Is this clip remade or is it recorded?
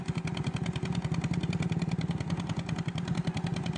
recorded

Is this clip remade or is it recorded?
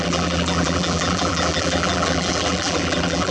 remade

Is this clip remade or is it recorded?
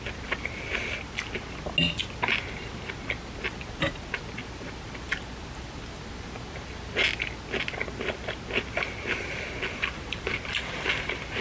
recorded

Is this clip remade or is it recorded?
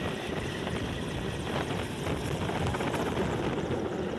recorded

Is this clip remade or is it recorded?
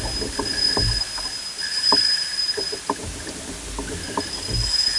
recorded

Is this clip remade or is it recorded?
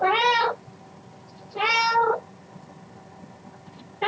recorded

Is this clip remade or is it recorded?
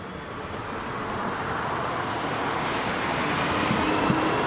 recorded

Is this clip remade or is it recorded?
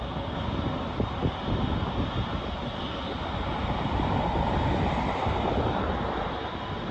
recorded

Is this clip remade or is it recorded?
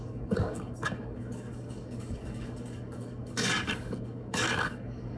remade